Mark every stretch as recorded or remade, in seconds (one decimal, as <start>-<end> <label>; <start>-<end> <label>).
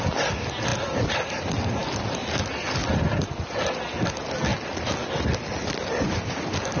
0.0-6.8 recorded